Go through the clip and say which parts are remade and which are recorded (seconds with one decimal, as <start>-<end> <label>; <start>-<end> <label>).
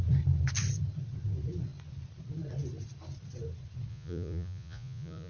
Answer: 0.0-3.9 recorded; 3.9-5.3 remade